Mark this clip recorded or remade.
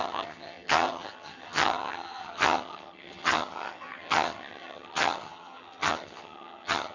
remade